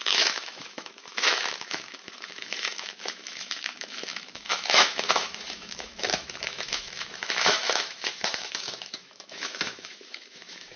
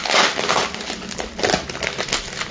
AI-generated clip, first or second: first